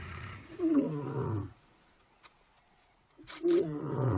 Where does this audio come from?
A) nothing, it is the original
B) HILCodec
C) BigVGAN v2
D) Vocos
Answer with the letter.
D